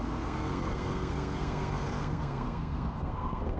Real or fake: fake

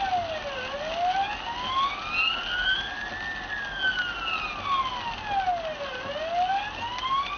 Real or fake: real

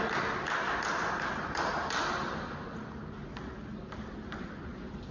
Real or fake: real